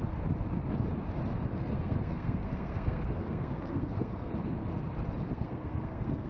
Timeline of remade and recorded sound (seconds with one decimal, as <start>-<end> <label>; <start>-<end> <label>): 0.0-1.5 recorded; 1.5-4.3 remade; 4.3-5.3 recorded; 5.3-6.3 remade